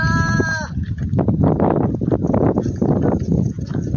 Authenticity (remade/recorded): recorded